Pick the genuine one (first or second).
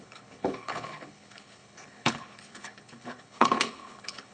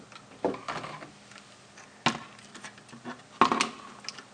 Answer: second